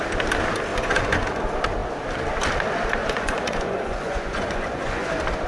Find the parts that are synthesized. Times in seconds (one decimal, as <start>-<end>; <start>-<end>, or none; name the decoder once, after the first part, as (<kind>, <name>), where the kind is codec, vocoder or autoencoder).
0.7-1.4 (vocoder, Vocos); 3.0-5.1